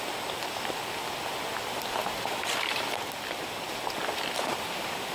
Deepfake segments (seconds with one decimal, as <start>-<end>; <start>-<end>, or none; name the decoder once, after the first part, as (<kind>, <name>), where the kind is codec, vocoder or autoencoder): none